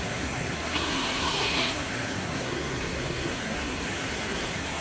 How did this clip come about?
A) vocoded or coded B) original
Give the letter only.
A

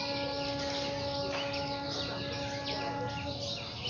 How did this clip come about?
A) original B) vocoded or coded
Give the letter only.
A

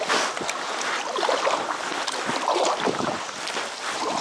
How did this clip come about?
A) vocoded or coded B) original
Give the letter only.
B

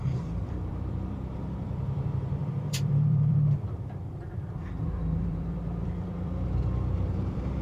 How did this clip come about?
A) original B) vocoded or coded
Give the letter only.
B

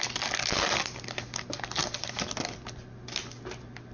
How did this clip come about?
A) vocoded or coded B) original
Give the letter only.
B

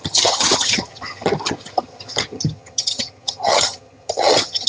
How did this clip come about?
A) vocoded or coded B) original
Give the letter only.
A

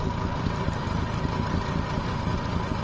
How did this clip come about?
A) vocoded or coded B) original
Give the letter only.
B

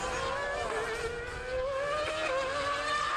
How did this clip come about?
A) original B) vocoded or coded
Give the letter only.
A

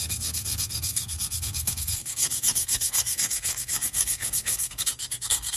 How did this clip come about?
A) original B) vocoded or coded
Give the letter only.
B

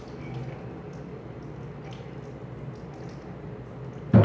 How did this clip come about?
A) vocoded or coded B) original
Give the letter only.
B